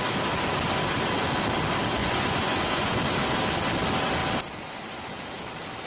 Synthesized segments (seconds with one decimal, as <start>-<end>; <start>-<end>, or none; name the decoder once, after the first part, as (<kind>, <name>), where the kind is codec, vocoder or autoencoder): 2.0-3.0 (vocoder, Vocos)